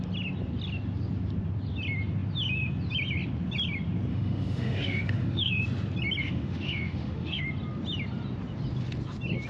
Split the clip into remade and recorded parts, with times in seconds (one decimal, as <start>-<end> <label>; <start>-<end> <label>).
0.0-4.1 recorded; 4.1-5.6 remade; 5.6-6.2 recorded; 6.2-7.4 remade; 7.4-9.5 recorded